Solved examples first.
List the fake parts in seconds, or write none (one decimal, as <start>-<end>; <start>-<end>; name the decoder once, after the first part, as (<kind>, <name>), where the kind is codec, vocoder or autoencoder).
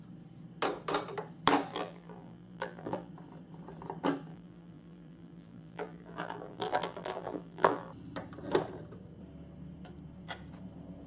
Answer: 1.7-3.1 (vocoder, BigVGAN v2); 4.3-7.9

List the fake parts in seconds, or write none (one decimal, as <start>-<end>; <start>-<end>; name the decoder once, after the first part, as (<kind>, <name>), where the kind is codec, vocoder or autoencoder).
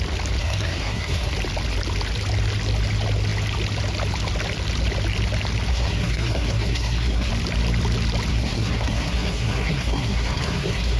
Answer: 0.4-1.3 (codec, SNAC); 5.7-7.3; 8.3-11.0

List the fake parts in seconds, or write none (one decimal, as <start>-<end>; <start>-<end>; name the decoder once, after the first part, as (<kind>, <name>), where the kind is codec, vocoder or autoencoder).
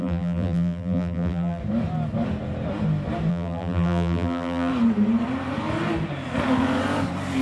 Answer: 0.0-1.6 (vocoder, BigVGAN v2); 3.3-4.7